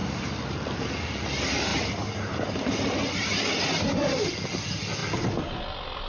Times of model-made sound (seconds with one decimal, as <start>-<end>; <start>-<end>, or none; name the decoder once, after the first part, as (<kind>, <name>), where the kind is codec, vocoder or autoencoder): 0.0-0.9 (vocoder, BigVGAN v2); 1.7-3.4